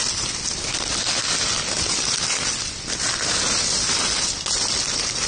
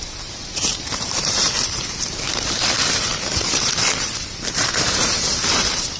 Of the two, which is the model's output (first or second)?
second